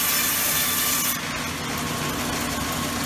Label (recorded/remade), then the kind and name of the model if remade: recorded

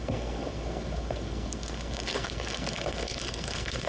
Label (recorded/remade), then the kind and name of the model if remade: remade, codec, SNAC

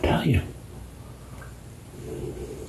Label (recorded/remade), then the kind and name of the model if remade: recorded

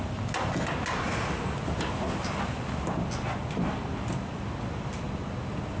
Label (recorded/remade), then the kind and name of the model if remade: recorded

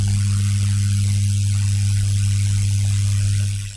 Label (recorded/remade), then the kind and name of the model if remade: recorded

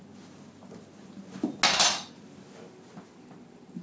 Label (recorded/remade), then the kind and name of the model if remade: recorded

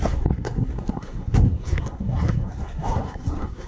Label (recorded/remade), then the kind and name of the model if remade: remade, codec, SNAC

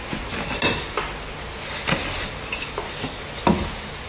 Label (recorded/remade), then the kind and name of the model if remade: recorded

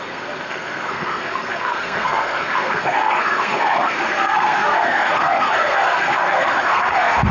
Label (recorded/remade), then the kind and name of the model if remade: remade, codec, SNAC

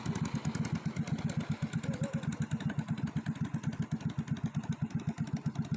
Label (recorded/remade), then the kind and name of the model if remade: recorded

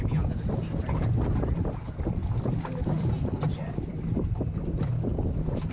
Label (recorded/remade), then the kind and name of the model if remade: recorded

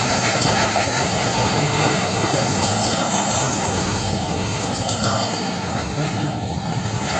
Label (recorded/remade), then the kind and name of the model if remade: remade, codec, SNAC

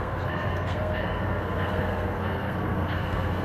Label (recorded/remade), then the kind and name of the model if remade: remade, codec, SNAC